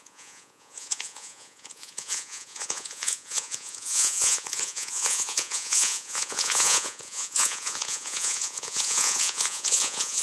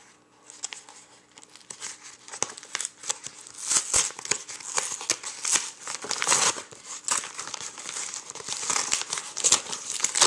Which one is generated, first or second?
first